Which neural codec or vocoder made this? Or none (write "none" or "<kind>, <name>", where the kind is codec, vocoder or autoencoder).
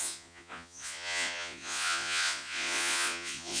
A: vocoder, Vocos